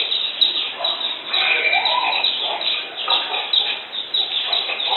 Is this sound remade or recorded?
remade